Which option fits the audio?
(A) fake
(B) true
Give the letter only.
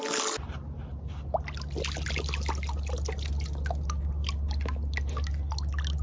B